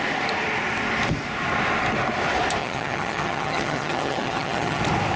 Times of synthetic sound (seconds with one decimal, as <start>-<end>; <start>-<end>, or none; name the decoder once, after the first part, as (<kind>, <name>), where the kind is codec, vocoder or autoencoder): 2.6-4.8 (vocoder, HiFi-GAN)